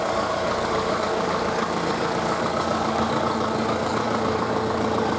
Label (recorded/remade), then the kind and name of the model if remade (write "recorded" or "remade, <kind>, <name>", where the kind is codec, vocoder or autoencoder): remade, codec, DAC